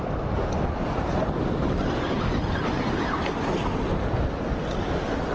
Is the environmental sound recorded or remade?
recorded